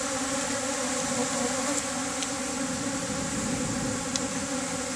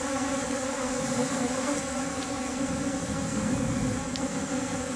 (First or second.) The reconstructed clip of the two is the second